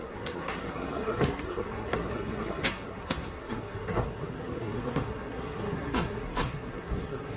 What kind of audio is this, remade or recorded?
remade